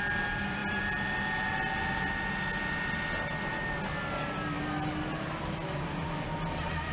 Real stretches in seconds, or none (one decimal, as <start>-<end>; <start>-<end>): 0.0-6.9